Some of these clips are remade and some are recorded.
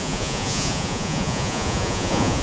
remade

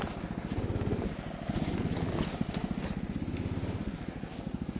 recorded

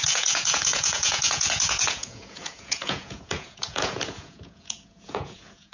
remade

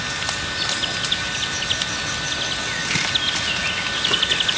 recorded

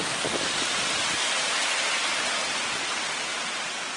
recorded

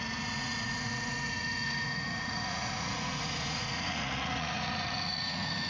remade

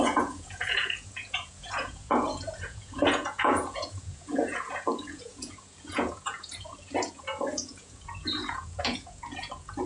remade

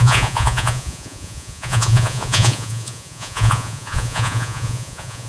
remade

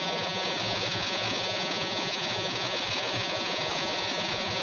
remade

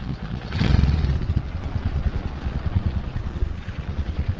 remade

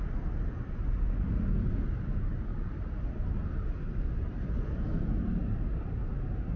recorded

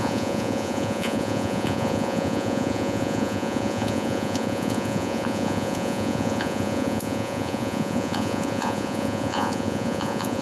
remade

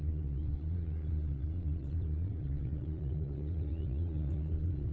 remade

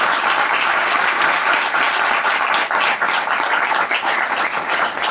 recorded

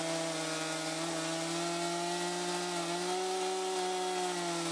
recorded